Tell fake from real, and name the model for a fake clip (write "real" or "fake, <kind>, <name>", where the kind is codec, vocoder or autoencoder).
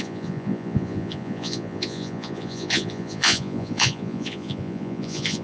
fake, vocoder, Vocos